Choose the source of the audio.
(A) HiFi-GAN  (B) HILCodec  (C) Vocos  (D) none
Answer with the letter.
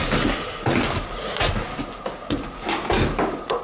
D